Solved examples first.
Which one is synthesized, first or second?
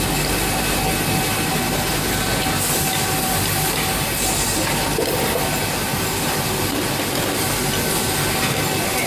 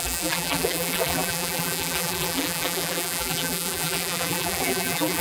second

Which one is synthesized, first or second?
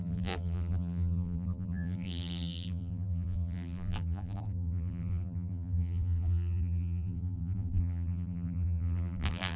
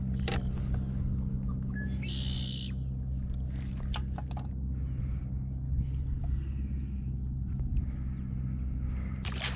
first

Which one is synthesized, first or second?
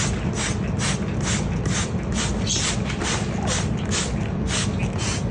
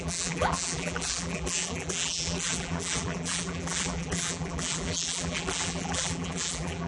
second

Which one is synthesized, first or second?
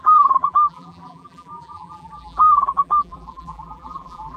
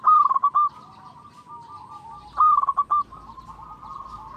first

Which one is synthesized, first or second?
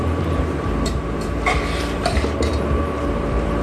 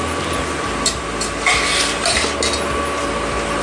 first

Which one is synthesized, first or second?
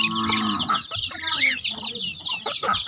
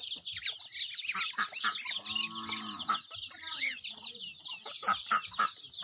first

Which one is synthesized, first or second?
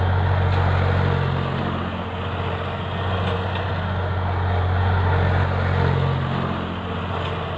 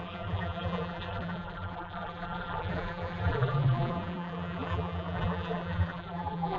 second